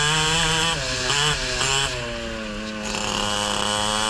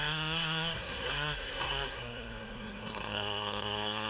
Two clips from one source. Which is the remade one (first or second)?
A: second